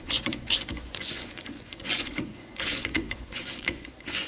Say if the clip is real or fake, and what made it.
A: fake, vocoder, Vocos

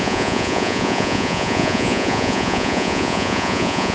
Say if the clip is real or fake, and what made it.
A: fake, vocoder, Vocos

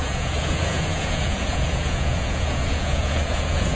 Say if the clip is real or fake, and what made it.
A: fake, vocoder, Vocos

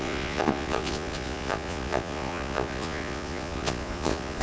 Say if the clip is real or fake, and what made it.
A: fake, vocoder, Vocos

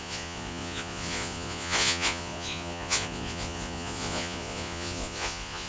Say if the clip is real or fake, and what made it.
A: fake, vocoder, Vocos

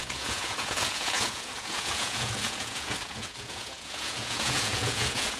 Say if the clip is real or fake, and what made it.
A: fake, vocoder, Vocos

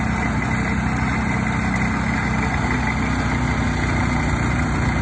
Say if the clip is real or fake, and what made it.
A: real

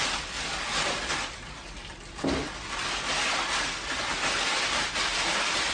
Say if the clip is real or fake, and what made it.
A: real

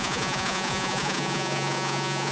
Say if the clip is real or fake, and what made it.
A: fake, vocoder, Vocos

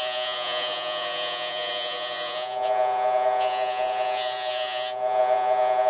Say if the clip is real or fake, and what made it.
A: fake, vocoder, Vocos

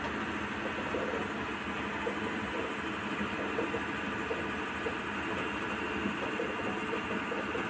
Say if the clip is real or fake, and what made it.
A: real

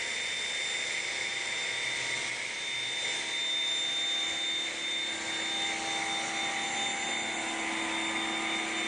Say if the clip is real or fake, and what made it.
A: real